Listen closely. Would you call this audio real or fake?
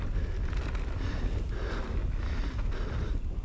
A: real